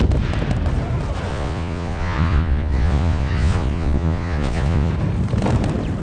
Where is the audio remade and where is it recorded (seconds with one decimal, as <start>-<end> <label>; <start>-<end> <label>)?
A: 0.0-1.3 recorded; 1.3-4.9 remade; 4.9-6.0 recorded